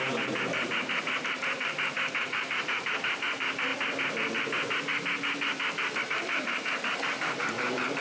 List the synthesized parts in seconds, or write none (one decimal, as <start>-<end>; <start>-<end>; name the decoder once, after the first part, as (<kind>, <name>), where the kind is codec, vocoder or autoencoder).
0.0-3.7 (vocoder, BigVGAN v2); 6.0-8.0